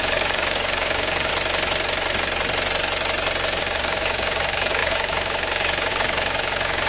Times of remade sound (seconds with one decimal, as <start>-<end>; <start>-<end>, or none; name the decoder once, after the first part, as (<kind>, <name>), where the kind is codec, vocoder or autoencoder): 0.0-1.3 (codec, DAC); 3.6-6.9